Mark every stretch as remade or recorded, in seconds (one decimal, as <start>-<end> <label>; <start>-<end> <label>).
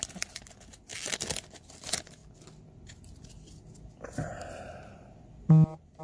0.0-6.0 recorded